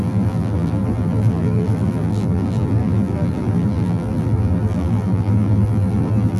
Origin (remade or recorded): remade